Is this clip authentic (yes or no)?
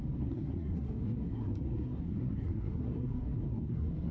no